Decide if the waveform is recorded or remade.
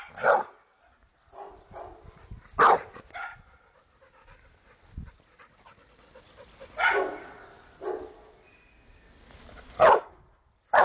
recorded